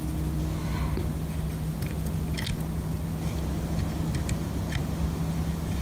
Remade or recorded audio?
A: recorded